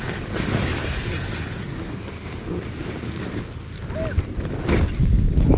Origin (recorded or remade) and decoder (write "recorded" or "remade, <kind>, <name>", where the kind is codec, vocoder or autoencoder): recorded